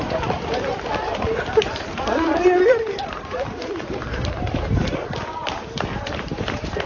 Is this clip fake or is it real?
fake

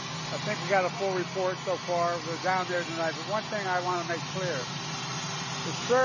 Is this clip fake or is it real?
real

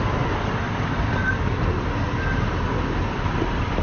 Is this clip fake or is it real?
real